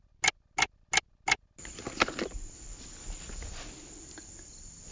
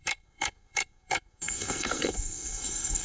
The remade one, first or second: second